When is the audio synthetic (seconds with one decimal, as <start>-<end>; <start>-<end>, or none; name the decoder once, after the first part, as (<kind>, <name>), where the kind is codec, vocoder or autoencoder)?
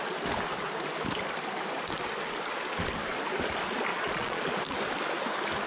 3.9-4.4 (vocoder, Vocos)